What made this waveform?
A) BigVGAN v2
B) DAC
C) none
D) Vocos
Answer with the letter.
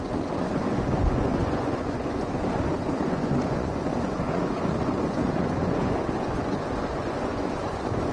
D